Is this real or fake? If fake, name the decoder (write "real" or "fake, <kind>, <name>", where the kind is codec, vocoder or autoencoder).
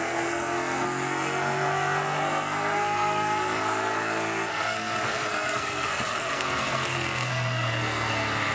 fake, codec, SNAC